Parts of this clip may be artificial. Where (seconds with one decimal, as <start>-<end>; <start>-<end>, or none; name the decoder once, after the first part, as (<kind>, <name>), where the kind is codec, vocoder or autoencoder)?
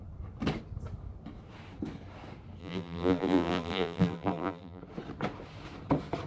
2.6-4.8 (vocoder, BigVGAN v2)